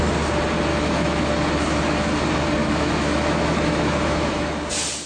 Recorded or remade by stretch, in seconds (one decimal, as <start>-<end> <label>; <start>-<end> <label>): 0.0-0.7 recorded; 0.7-1.3 remade; 1.3-2.6 recorded; 2.6-4.5 remade; 4.5-5.1 recorded